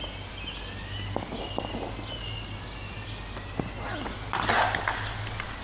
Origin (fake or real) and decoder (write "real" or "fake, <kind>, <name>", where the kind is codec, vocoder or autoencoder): real